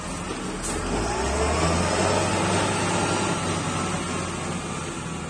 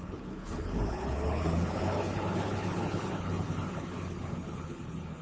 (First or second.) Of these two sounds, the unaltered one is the first